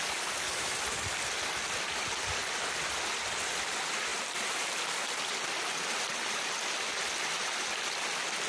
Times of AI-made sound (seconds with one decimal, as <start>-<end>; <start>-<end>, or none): 2.4-3.3; 4.1-6.0; 7.4-8.5